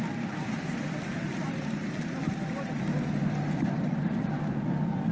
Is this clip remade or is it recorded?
remade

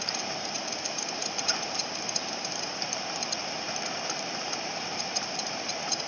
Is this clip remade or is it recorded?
remade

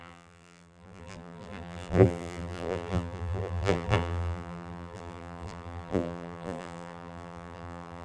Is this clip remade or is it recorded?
remade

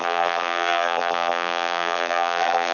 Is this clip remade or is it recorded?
remade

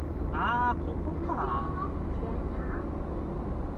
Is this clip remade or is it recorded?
recorded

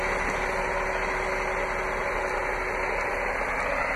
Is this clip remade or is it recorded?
recorded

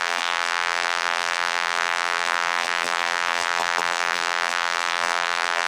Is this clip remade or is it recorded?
remade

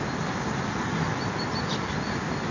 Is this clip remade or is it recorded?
recorded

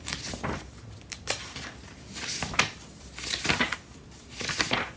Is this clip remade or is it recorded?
remade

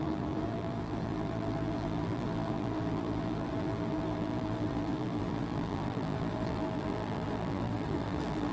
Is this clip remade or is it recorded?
remade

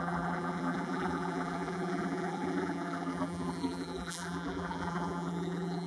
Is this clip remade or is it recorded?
remade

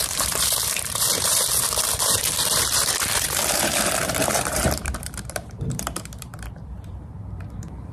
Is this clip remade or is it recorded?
remade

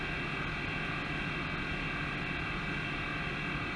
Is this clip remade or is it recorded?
recorded